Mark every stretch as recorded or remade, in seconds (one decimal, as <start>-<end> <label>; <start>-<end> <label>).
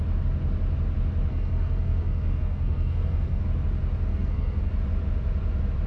0.0-1.3 recorded; 1.3-3.4 remade; 3.4-4.1 recorded; 4.1-4.7 remade; 4.7-5.9 recorded